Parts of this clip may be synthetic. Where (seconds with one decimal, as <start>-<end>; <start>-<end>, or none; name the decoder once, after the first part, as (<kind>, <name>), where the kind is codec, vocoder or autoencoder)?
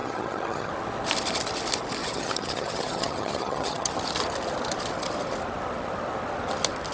0.0-0.7 (vocoder, HiFi-GAN); 2.0-3.9